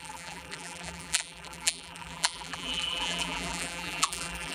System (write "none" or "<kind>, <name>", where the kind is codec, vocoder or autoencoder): vocoder, BigVGAN v2